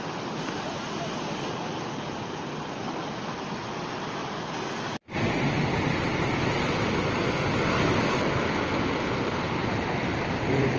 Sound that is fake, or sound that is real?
real